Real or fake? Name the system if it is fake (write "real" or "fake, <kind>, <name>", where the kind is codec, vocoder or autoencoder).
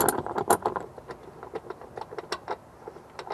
real